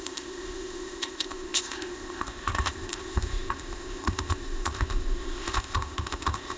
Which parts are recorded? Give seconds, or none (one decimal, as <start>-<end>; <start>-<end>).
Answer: none